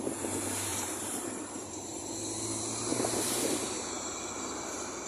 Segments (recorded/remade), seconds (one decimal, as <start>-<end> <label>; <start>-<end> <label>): 0.0-0.7 recorded; 0.7-2.1 remade; 2.1-2.9 recorded; 2.9-4.1 remade; 4.1-5.1 recorded